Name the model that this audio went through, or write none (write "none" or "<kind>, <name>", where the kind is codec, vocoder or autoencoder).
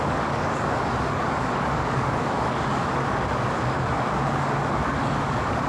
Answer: codec, DAC